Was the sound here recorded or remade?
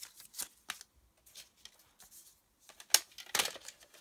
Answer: recorded